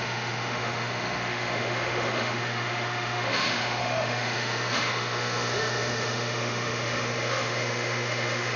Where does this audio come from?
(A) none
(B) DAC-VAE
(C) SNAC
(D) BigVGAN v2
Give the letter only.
B